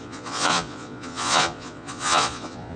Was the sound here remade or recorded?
remade